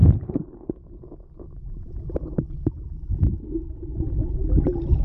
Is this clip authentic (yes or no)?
yes